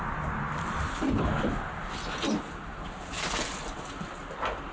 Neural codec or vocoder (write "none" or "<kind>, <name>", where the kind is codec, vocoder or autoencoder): none